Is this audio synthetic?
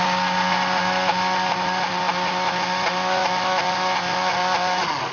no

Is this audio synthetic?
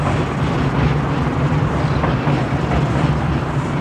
yes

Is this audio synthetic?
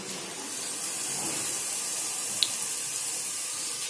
no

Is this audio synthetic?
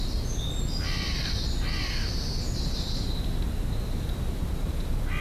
no